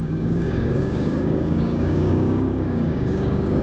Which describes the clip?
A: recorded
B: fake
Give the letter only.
B